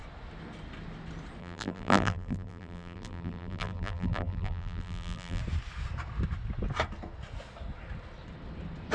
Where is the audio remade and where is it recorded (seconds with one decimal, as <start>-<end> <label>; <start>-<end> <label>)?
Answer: 0.0-1.4 recorded; 1.4-5.4 remade; 5.4-8.9 recorded